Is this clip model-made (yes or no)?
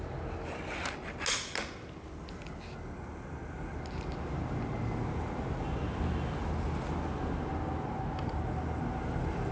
no